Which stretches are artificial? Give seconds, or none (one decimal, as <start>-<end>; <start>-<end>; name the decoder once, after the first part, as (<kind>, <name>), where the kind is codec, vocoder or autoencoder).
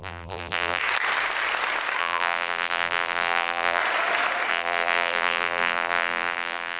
0.0-0.8 (vocoder, BigVGAN v2); 2.0-3.8; 4.5-6.8